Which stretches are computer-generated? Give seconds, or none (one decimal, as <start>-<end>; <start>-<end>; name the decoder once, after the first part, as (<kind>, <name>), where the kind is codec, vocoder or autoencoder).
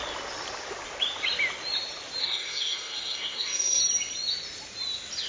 2.2-3.8 (codec, SNAC)